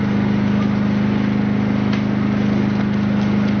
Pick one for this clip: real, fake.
real